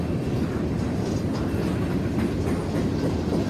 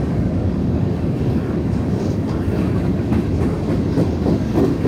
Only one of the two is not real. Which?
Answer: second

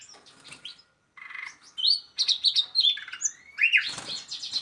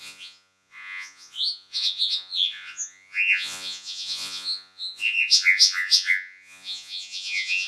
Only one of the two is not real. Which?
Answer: second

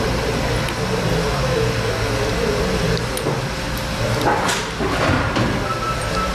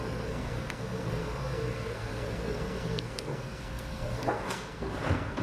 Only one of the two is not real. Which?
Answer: second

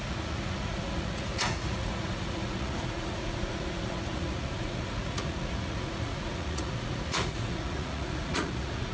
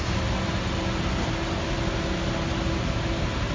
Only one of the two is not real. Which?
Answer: first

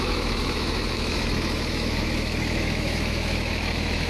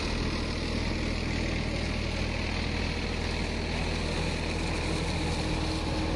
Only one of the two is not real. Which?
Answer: first